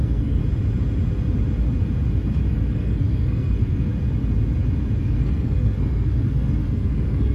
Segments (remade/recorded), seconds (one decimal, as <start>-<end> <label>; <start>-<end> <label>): 0.0-0.4 remade; 0.4-2.5 recorded; 2.5-3.9 remade; 3.9-5.0 recorded; 5.0-7.3 remade